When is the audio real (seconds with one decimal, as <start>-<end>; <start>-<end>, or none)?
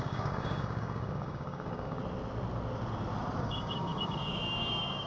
2.0-3.4